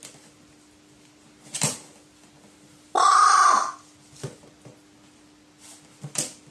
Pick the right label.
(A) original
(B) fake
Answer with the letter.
A